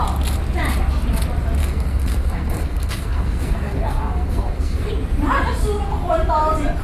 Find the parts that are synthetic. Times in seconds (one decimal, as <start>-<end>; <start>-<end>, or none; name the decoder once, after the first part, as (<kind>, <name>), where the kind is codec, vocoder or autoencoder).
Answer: 1.6-4.9 (codec, SNAC)